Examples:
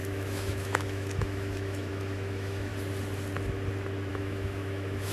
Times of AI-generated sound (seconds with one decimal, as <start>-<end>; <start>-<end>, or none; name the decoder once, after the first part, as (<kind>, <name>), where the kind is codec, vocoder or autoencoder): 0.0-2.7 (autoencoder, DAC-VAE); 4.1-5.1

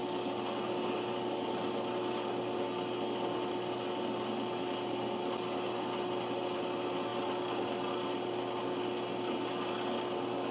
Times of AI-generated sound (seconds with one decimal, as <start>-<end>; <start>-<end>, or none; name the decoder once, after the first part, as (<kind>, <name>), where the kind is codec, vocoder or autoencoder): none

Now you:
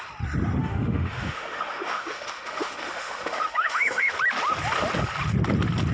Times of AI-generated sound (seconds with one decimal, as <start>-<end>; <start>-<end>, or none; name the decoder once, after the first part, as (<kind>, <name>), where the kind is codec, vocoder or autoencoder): 0.6-4.1 (autoencoder, DAC-VAE)